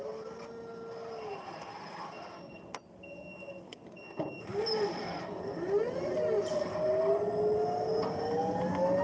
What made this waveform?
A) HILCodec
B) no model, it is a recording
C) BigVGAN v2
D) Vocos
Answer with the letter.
B